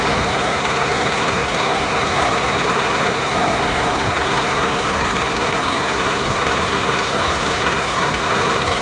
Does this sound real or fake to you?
fake